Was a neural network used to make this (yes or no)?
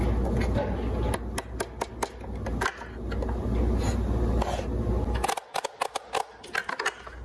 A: no